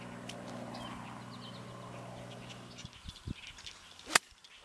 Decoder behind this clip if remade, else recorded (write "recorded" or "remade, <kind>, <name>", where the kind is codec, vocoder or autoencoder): recorded